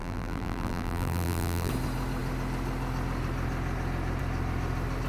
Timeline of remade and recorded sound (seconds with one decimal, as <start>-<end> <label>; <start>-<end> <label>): 0.0-1.7 remade; 1.7-5.1 recorded